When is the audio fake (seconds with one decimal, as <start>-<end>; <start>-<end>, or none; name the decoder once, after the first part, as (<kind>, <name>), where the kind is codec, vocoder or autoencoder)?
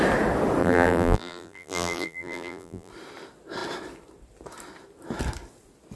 0.6-2.9 (vocoder, BigVGAN v2)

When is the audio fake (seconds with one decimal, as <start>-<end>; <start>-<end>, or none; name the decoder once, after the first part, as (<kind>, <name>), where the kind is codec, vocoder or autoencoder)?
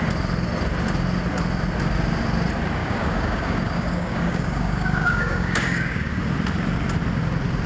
2.8-6.2 (codec, DAC)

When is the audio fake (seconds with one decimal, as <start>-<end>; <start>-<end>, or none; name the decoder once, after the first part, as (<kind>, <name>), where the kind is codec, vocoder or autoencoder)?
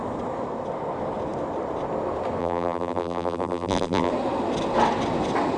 2.4-4.1 (vocoder, BigVGAN v2)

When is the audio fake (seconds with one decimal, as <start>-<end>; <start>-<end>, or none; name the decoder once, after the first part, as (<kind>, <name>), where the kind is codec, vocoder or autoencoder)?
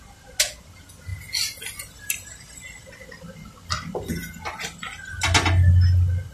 none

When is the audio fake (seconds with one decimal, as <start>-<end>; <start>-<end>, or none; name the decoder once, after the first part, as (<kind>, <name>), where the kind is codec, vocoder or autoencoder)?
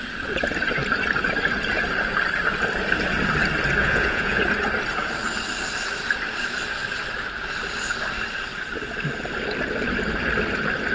3.8-4.4 (vocoder, Vocos)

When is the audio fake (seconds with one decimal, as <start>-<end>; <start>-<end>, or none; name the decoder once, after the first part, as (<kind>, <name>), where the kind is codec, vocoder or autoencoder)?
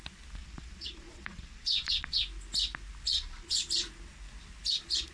0.4-2.2 (vocoder, Vocos); 3.1-3.7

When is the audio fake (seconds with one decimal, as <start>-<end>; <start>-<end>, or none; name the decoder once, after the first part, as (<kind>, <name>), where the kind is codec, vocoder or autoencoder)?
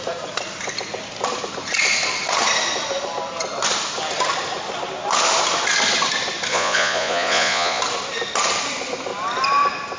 6.5-7.8 (vocoder, Vocos)